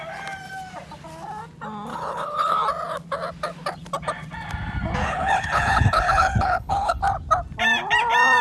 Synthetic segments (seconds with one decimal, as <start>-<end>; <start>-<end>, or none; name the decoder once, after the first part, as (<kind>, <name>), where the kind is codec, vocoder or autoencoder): 1.9-2.6 (codec, HILCodec); 5.0-7.0